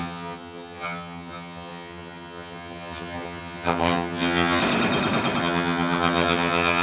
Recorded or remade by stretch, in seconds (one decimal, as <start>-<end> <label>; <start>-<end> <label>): 0.0-4.6 remade; 4.6-5.4 recorded; 5.4-6.8 remade